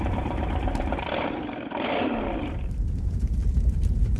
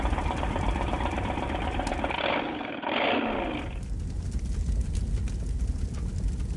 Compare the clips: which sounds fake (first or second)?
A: first